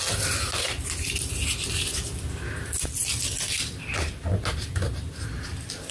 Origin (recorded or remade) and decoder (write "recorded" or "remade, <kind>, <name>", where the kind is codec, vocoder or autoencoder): recorded